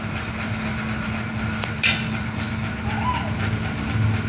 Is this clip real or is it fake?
real